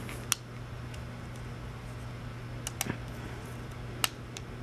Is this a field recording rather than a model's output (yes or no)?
yes